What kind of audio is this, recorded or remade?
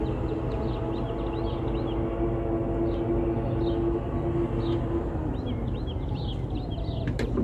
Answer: recorded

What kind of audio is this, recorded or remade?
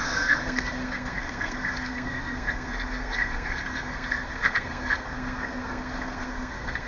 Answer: remade